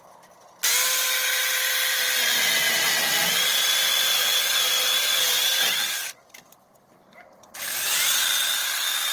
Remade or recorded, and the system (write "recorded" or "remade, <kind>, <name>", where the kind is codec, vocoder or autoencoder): recorded